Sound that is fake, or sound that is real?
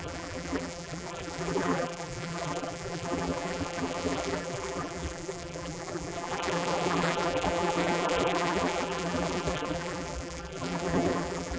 fake